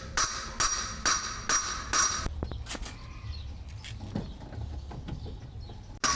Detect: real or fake real